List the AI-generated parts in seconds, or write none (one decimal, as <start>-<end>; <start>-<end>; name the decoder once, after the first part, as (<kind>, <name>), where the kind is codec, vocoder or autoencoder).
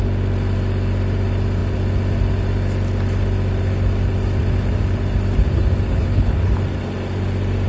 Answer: 5.9-6.5 (codec, HILCodec)